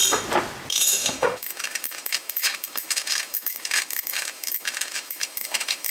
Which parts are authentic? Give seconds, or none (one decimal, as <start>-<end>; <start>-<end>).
0.0-0.7